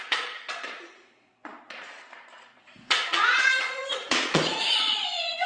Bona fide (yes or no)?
no